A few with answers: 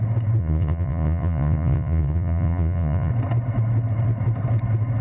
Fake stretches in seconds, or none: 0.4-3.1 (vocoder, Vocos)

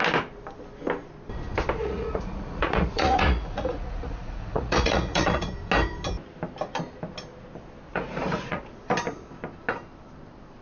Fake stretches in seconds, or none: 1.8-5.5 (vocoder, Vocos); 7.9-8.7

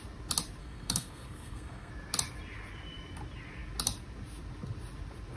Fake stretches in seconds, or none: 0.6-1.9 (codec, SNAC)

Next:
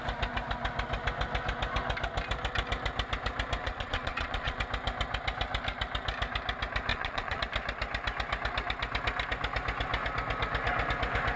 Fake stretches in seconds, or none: 3.6-4.6 (vocoder, Vocos); 6.9-7.4

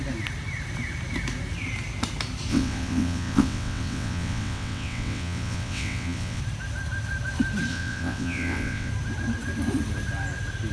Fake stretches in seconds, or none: 2.5-6.4 (vocoder, WaveNeXt); 7.7-8.9

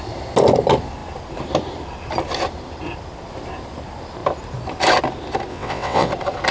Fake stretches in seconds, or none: 5.5-6.1 (vocoder, WaveNeXt)